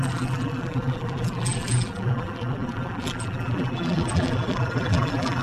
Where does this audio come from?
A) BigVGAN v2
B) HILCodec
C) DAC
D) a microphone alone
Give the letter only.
A